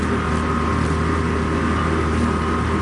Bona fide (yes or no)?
yes